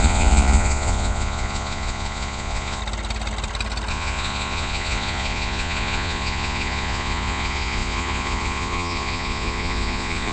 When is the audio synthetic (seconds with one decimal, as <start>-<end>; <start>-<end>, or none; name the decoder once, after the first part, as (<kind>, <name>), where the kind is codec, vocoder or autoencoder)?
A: 0.0-2.8 (vocoder, Vocos); 3.9-10.3